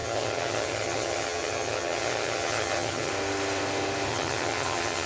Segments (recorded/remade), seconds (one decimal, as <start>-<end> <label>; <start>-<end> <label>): 0.0-3.1 remade; 3.1-4.1 recorded; 4.1-5.1 remade